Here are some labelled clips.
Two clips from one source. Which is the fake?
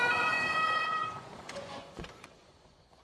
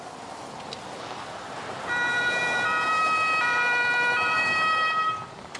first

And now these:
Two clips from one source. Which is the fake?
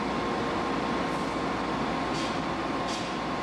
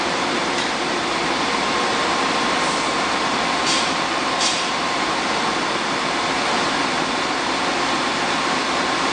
second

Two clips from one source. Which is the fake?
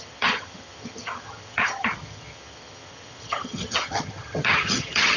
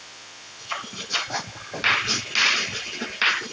first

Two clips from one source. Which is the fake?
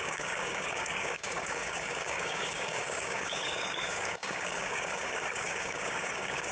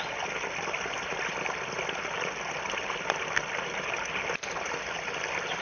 first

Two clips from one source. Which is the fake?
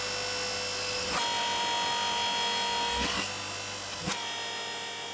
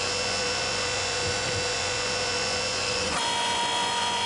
second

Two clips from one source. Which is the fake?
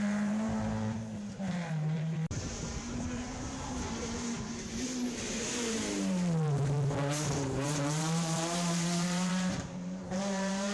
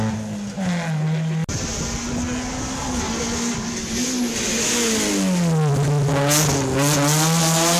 first